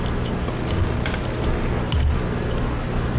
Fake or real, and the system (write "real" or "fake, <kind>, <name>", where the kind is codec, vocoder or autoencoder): real